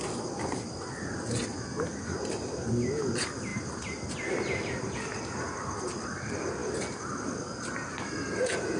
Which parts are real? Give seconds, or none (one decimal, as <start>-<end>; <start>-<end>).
0.0-8.8